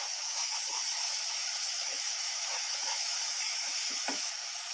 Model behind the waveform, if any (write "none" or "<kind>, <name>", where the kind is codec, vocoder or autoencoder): autoencoder, DAC-VAE